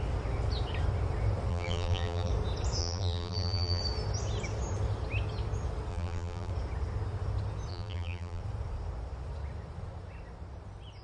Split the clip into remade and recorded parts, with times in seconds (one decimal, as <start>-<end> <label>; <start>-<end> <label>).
0.0-1.5 recorded; 1.5-2.3 remade; 2.3-2.8 recorded; 2.8-3.8 remade; 3.8-5.9 recorded; 5.9-6.5 remade; 6.5-7.7 recorded; 7.7-8.4 remade; 8.4-11.0 recorded